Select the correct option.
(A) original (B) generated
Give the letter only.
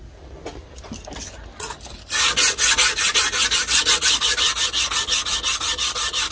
A